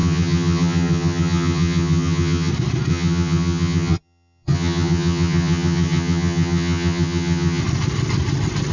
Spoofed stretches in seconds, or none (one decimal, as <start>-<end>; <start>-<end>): 0.0-2.5; 2.9-7.6